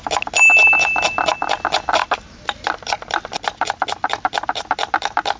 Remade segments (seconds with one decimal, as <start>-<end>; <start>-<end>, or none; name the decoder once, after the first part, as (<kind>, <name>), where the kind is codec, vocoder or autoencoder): 2.0-5.4 (vocoder, BigVGAN v2)